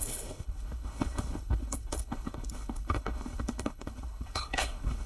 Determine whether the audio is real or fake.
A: fake